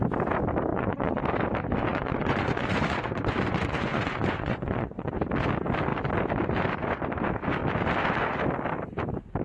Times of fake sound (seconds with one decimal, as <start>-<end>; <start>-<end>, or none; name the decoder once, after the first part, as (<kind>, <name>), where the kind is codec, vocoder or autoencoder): 0.7-1.2 (vocoder, Vocos); 1.9-5.1